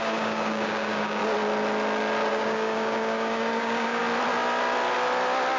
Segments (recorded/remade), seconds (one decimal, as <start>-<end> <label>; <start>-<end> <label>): 0.0-1.2 remade; 1.2-2.3 recorded; 2.3-4.0 remade; 4.0-5.6 recorded